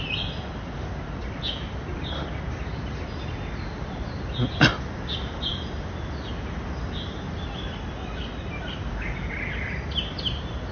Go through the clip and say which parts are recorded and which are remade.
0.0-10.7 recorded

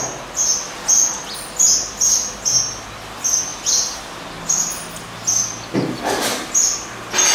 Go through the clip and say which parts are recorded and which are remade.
0.0-7.3 recorded

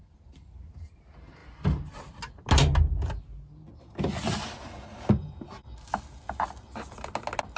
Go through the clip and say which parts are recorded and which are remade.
0.0-7.6 recorded

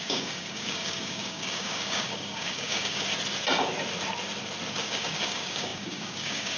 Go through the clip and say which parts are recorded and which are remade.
0.0-3.1 remade; 3.1-4.8 recorded; 4.8-6.6 remade

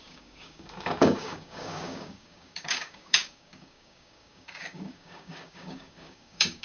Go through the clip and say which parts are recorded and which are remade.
0.0-6.6 remade

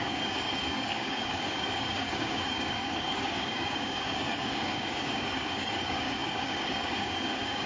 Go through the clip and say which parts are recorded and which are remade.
0.0-7.7 remade